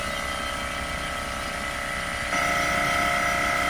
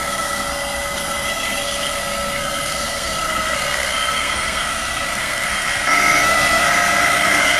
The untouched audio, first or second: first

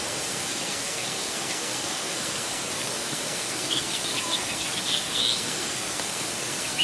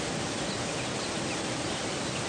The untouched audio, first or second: second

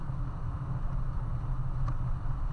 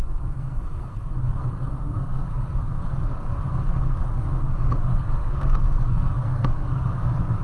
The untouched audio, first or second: first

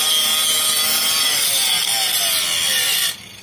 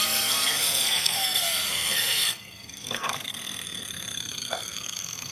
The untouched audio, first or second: first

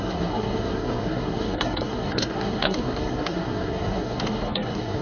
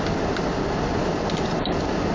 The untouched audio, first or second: second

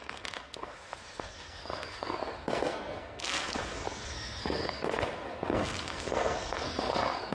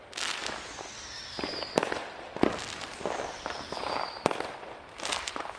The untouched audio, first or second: second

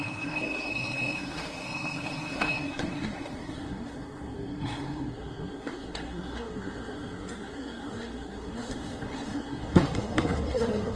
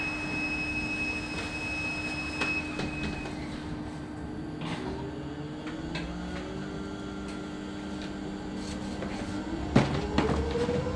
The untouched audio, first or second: second